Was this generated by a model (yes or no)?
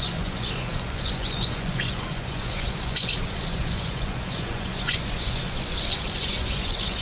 yes